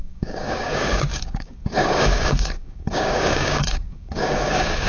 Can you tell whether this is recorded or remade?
remade